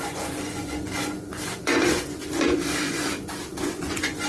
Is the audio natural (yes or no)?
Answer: no